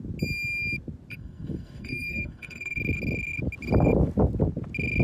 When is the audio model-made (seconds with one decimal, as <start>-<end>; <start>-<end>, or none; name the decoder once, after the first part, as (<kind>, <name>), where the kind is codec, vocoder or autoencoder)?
1.1-2.8 (codec, SNAC)